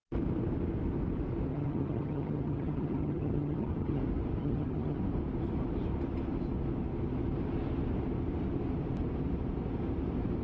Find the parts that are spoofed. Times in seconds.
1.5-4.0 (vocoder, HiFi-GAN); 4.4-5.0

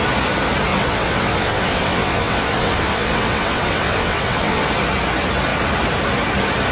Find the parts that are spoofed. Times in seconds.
0.7-4.6 (vocoder, WaveNeXt)

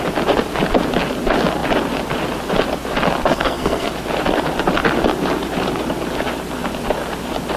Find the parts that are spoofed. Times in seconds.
3.3-3.9 (codec, SNAC)

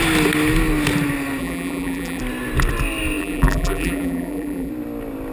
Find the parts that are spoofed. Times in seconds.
1.4-2.2 (vocoder, BigVGAN v2); 3.2-4.7

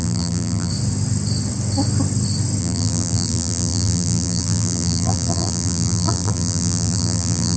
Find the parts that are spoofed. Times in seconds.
0.0-0.7 (vocoder, BigVGAN v2); 2.6-7.6

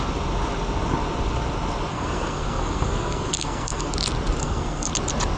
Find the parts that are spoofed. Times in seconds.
1.9-3.9 (codec, SNAC); 4.4-4.9